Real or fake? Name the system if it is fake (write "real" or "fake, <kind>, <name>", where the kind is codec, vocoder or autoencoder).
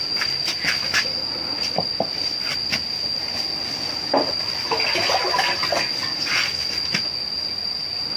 real